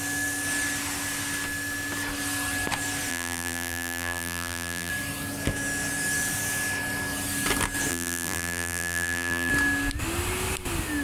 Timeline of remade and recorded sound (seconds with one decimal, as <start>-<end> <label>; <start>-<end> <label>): 0.0-3.1 recorded; 3.1-4.9 remade; 4.9-7.9 recorded; 7.9-9.5 remade; 9.5-11.0 recorded